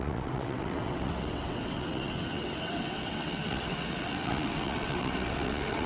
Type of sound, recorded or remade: remade